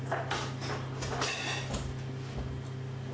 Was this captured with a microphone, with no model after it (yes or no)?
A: yes